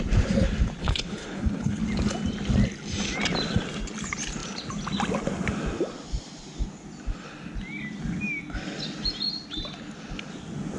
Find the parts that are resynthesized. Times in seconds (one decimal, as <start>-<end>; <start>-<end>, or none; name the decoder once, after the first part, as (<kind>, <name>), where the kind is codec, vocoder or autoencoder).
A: 0.8-1.8 (codec, HILCodec)